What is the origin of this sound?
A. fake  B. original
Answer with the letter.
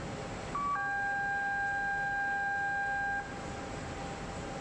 B